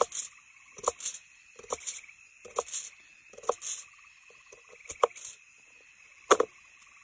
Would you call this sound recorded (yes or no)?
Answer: yes